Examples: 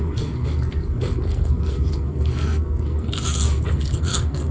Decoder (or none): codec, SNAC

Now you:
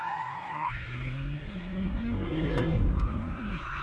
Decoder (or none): codec, SNAC